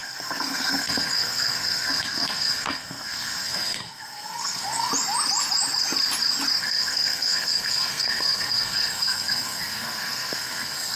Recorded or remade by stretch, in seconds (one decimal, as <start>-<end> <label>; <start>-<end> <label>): 0.0-4.9 remade; 4.9-6.6 recorded; 6.6-11.0 remade